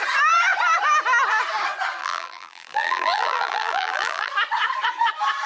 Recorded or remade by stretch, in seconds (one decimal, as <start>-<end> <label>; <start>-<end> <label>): 0.0-2.0 recorded; 2.0-4.3 remade; 4.3-5.5 recorded